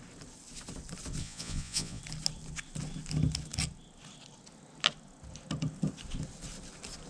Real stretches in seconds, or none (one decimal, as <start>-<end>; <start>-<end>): 0.0-1.2; 2.0-7.1